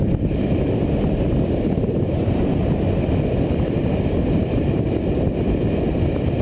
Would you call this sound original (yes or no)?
yes